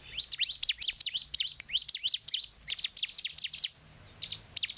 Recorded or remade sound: recorded